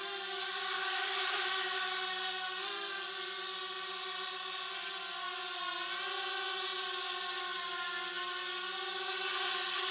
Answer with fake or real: real